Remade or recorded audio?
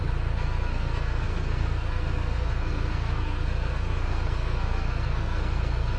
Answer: remade